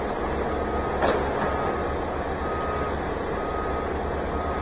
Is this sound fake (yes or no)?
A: no